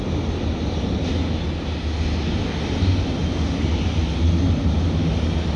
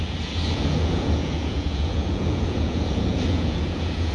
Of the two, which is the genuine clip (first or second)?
first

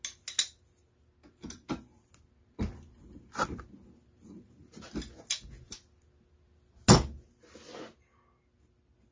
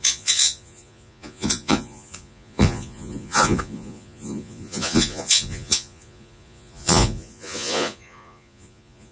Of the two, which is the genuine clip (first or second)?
first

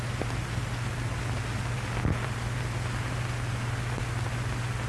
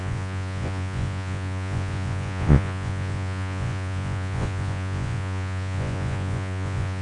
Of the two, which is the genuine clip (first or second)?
first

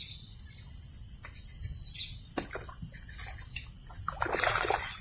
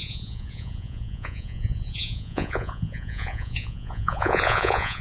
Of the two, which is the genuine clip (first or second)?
first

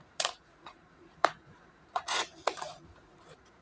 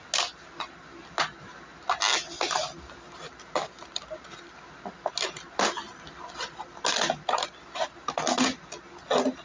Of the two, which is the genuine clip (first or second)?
second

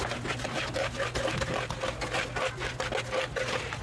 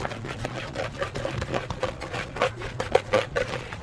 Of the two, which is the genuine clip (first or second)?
first